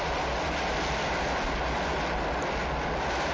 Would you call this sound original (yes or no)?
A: yes